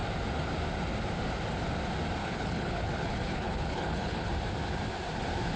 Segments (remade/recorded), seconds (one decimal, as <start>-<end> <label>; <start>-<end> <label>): 0.0-2.2 recorded; 2.2-4.3 remade; 4.3-5.6 recorded